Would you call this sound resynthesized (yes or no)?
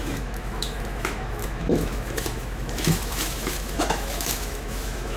yes